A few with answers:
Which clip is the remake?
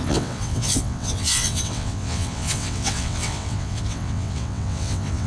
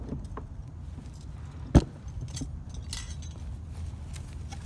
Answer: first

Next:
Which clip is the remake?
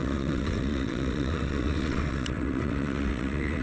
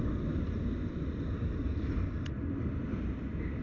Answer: first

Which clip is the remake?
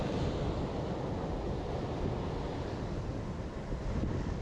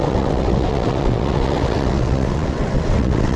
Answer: second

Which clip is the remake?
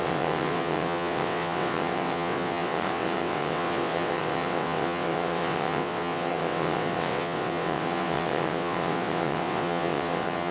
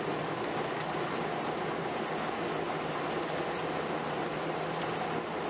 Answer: first